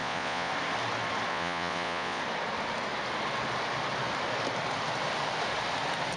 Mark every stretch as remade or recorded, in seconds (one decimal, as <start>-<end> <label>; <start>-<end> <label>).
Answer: 0.0-0.5 remade; 0.5-1.3 recorded; 1.3-2.2 remade; 2.2-6.2 recorded